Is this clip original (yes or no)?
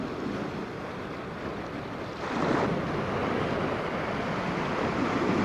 yes